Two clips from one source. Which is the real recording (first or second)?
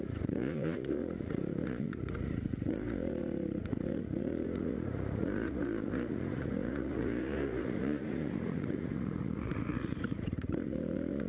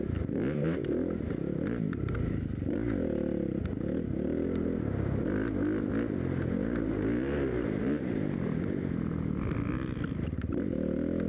second